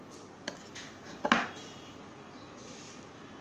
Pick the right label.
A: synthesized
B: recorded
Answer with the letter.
B